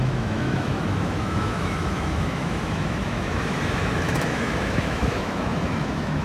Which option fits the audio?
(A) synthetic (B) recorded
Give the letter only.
A